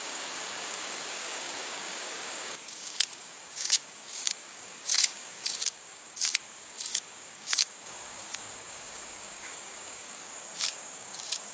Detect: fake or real fake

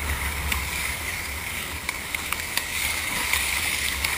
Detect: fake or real fake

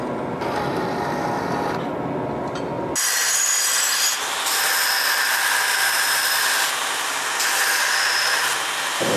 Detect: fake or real real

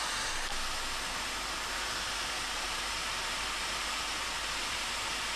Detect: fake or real real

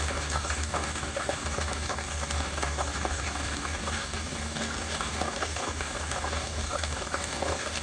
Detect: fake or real fake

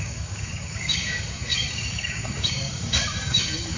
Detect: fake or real fake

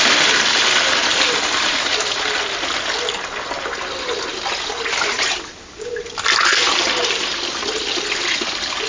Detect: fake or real real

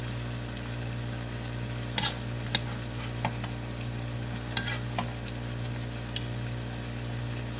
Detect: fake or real real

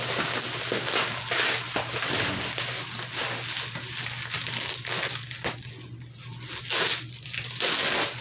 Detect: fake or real real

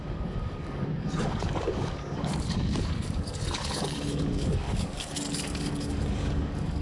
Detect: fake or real fake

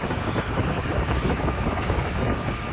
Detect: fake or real fake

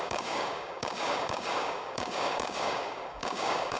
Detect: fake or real fake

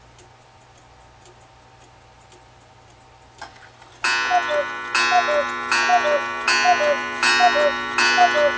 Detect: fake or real real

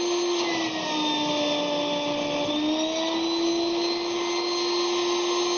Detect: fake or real real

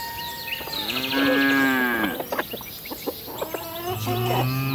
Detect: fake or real real